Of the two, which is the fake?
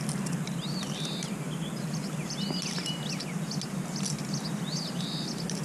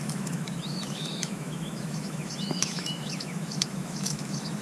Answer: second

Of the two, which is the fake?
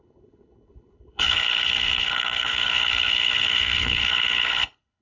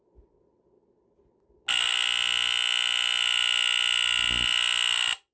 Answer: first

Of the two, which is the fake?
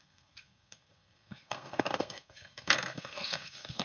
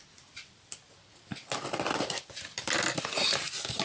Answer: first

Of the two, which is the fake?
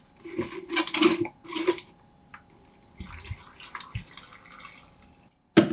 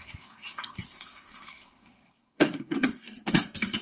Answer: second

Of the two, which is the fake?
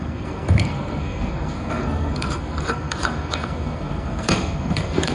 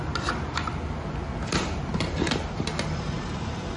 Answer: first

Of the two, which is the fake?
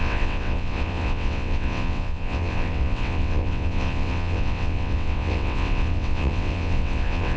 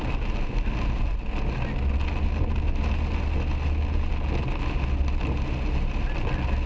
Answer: first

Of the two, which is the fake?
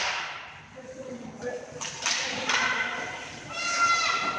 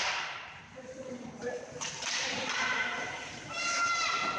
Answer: second